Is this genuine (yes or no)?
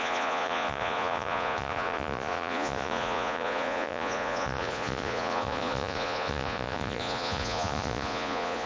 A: no